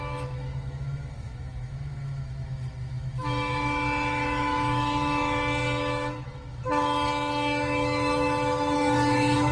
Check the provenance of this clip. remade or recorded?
remade